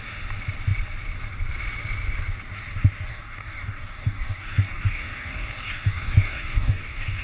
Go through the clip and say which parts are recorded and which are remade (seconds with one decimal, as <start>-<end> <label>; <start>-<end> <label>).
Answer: 0.0-3.1 recorded; 3.1-7.2 remade